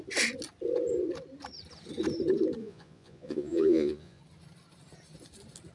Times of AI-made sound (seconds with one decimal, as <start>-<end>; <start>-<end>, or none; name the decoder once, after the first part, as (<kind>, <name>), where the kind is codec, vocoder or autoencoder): 2.6-4.2 (vocoder, Vocos)